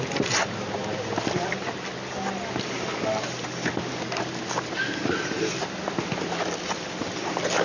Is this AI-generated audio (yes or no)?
no